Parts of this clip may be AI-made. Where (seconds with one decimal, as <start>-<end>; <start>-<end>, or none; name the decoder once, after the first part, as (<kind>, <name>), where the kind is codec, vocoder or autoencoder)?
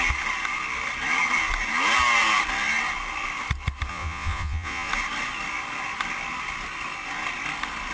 3.9-4.9 (vocoder, Vocos)